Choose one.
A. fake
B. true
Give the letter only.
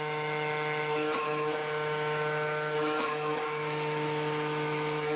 A